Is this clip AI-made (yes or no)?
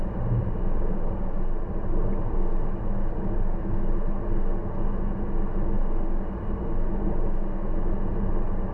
no